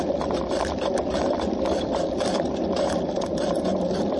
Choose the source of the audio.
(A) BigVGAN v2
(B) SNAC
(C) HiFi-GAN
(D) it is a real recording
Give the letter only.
D